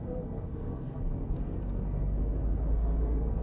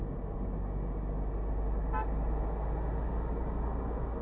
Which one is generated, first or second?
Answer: first